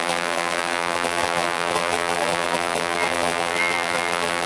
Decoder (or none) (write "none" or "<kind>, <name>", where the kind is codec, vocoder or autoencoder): vocoder, BigVGAN v2